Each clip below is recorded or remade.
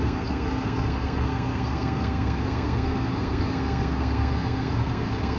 remade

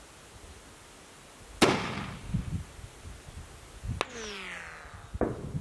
recorded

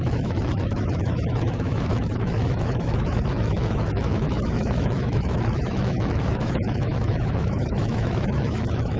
remade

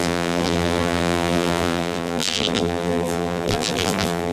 remade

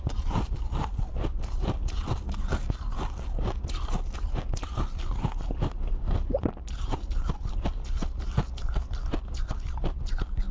recorded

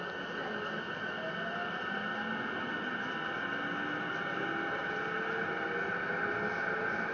recorded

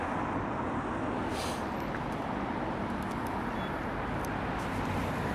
recorded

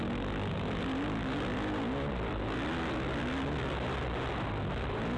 recorded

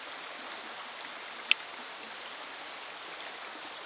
recorded